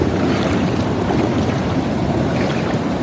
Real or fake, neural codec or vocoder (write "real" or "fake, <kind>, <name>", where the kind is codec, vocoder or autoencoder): fake, vocoder, BigVGAN v2